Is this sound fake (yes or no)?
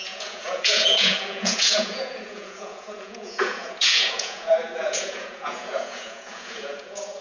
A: yes